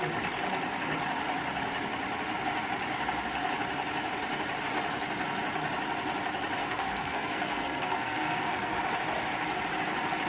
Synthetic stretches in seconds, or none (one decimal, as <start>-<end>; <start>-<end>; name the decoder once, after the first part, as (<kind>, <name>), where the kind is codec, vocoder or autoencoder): 6.6-8.8 (codec, SNAC)